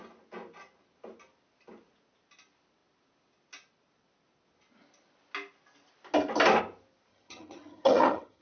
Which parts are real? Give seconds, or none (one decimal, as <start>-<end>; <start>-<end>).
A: 0.0-7.1